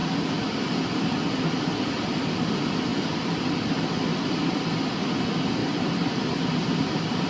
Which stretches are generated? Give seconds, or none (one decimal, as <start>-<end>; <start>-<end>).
5.6-7.3